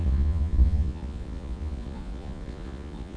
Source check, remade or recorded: remade